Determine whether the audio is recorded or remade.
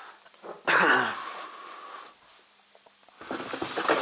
recorded